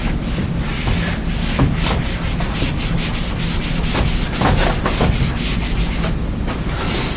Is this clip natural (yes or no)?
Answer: yes